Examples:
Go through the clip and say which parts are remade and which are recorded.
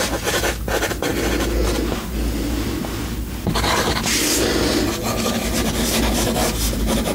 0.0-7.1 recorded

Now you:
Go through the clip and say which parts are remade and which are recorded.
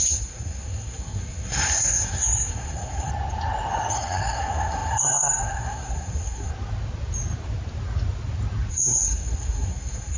0.0-3.1 remade; 3.1-3.9 recorded; 3.9-6.5 remade; 6.5-8.7 recorded; 8.7-10.2 remade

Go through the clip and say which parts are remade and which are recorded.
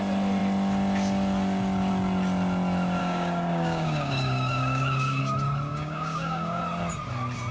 0.0-3.0 recorded; 3.0-5.2 remade; 5.2-5.7 recorded; 5.7-6.6 remade; 6.6-7.5 recorded